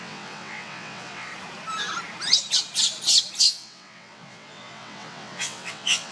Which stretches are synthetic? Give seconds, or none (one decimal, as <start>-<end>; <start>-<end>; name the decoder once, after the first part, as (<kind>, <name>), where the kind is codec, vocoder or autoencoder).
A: 0.0-1.3 (vocoder, WaveNeXt); 3.4-6.1